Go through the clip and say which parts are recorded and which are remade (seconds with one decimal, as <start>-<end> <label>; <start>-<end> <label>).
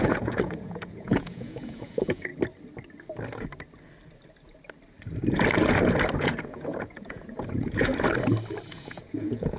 0.0-2.3 remade; 2.3-6.2 recorded; 6.2-7.9 remade; 7.9-8.7 recorded; 8.7-9.6 remade